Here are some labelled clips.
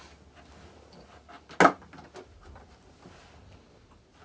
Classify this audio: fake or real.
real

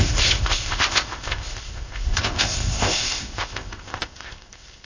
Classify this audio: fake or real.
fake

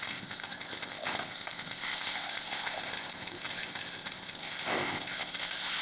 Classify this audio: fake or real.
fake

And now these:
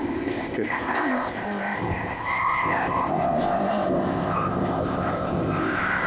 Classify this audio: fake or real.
fake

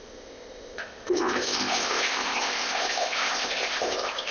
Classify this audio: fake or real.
fake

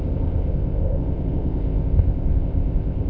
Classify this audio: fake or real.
fake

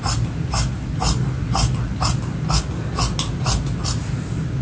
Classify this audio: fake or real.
real